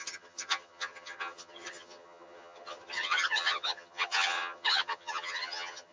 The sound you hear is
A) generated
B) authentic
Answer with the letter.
A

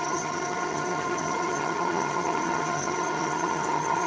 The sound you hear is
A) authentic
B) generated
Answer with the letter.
B